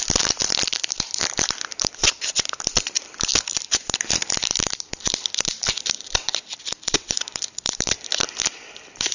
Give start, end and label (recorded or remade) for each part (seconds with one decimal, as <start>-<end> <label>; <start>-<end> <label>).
0.0-9.1 remade